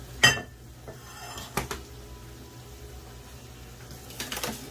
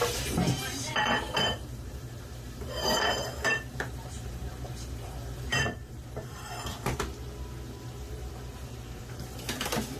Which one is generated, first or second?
second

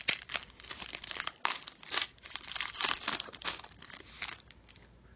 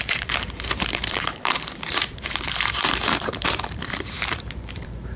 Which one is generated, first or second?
second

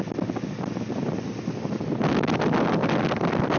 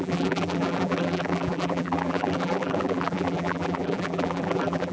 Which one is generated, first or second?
second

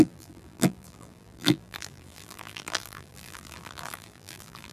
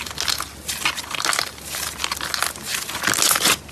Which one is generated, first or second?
first